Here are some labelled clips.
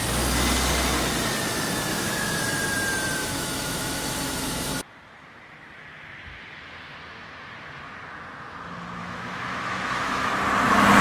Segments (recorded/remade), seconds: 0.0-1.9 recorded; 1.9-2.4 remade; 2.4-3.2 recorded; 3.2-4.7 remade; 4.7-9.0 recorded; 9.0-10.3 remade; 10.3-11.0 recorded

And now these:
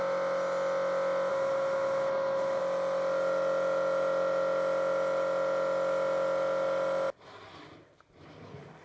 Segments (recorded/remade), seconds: 0.0-1.3 recorded; 1.3-2.6 remade; 2.6-8.8 recorded

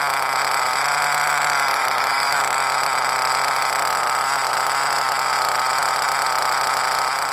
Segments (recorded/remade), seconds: 0.0-1.7 recorded; 1.7-2.4 remade; 2.4-7.3 recorded